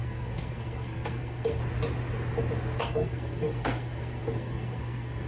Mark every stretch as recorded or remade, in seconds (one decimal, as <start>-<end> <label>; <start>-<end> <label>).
0.0-1.6 remade; 1.6-2.8 recorded; 2.8-5.3 remade